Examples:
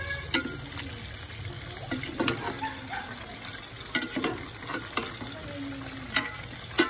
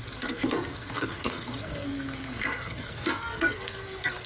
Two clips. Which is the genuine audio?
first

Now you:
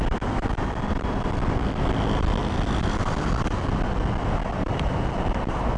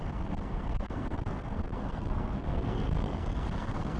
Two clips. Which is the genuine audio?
first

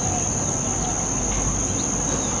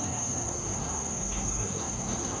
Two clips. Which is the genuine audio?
first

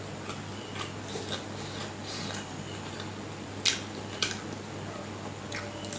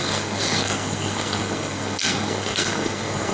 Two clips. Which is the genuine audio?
first